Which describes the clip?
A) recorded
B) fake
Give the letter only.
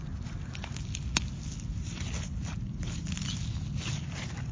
A